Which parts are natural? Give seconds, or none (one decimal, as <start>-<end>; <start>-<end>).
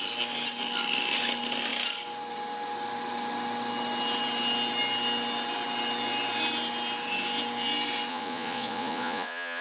0.0-8.1